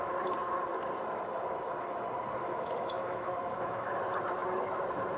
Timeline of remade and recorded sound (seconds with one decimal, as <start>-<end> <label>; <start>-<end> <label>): 0.0-2.4 recorded; 2.4-4.0 remade; 4.0-5.2 recorded